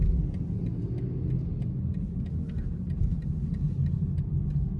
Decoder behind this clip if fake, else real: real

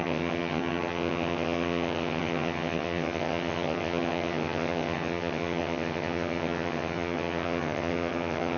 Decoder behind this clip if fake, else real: fake, vocoder, HiFi-GAN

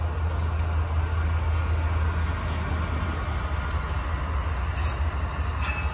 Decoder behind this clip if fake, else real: real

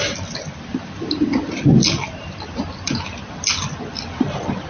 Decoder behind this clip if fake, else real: real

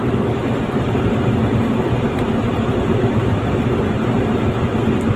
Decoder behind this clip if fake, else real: real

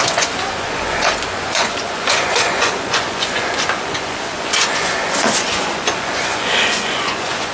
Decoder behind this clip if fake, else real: fake, vocoder, Vocos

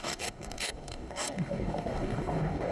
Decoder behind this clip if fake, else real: fake, codec, DAC